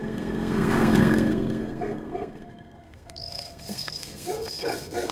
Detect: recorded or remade remade